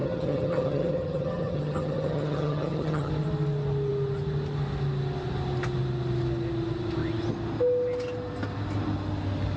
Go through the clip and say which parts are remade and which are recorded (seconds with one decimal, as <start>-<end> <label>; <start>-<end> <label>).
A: 0.0-3.1 remade; 3.1-9.6 recorded